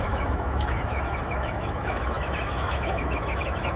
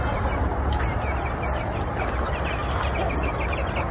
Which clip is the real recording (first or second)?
second